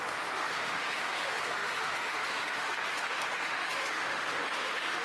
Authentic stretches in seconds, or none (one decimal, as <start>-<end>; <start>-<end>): none

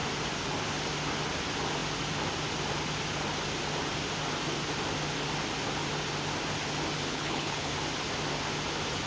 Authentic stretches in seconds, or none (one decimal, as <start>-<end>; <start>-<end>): 0.0-7.1; 7.7-9.1